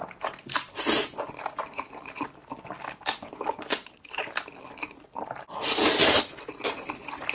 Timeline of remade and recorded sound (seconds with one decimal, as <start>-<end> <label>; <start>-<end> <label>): 0.0-7.3 recorded